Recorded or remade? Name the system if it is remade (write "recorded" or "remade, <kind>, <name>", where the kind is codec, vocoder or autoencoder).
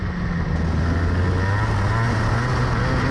recorded